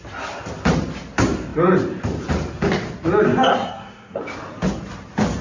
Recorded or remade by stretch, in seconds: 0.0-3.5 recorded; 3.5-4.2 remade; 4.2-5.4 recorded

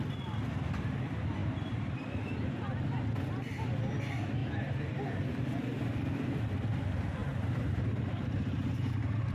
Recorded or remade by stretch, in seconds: 0.0-1.4 recorded; 1.4-2.0 remade; 2.0-4.4 recorded; 4.4-5.8 remade; 5.8-7.2 recorded; 7.2-8.9 remade; 8.9-9.3 recorded

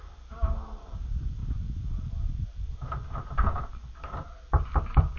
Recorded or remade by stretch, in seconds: 0.0-5.2 recorded

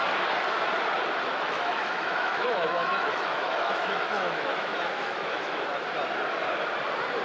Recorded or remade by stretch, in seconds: 0.0-1.3 recorded; 1.3-5.6 remade; 5.6-7.2 recorded